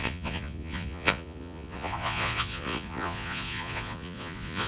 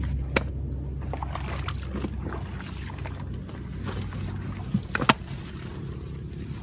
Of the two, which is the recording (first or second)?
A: second